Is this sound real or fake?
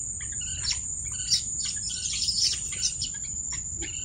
real